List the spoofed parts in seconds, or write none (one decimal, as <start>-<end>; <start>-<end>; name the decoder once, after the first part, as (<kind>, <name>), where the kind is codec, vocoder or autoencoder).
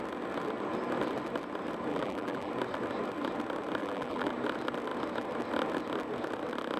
1.9-2.5 (vocoder, BigVGAN v2); 3.8-4.3